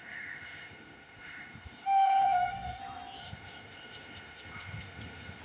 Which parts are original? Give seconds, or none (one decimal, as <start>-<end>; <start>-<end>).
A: 2.8-3.2